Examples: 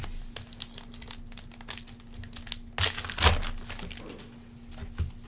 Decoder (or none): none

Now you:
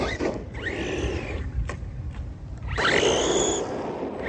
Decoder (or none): none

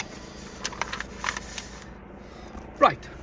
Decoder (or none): none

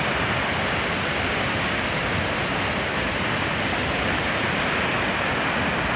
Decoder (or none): none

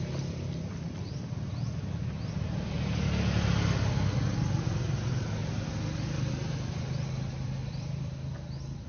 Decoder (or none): none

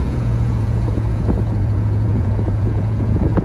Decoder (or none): vocoder, Vocos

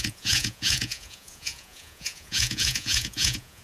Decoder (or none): vocoder, Vocos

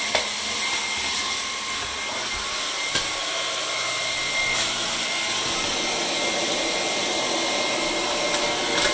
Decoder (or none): none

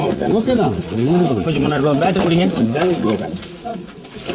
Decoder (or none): vocoder, Vocos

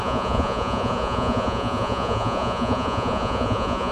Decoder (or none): vocoder, Vocos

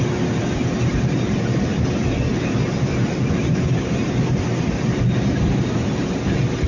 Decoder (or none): none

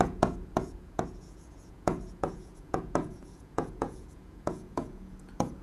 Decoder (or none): vocoder, Vocos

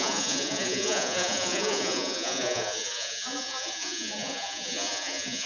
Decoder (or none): vocoder, Vocos